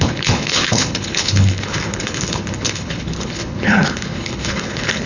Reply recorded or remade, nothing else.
remade